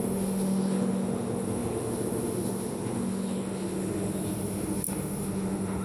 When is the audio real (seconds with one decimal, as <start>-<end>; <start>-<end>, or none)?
none

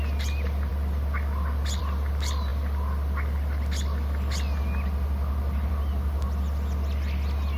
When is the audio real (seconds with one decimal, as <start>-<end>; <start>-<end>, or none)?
0.0-7.6

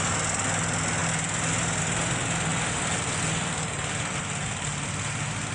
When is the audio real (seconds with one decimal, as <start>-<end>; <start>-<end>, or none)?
0.0-5.5

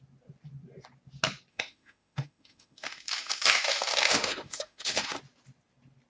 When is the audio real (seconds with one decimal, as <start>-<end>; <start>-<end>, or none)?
0.0-1.5; 5.2-6.1